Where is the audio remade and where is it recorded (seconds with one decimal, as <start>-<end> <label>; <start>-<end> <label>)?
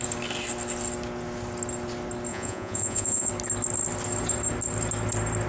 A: 0.0-2.3 recorded; 2.3-3.3 remade; 3.3-5.5 recorded